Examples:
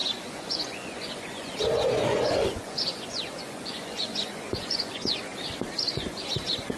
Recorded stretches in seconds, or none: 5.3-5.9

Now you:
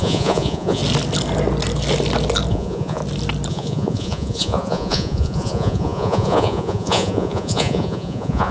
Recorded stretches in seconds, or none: 0.8-2.5; 3.0-3.5

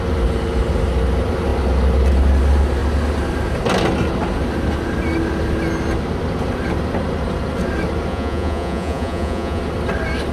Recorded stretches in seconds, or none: 0.0-8.1; 9.6-10.3

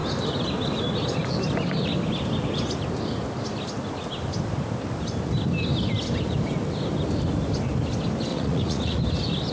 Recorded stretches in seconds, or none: 0.0-8.3; 9.0-9.5

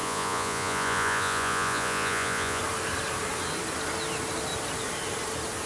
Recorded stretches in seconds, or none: 2.6-5.7

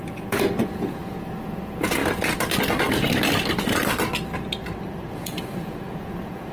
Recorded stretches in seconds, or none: 2.0-5.1

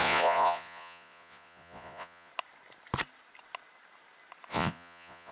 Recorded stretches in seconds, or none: 2.3-4.5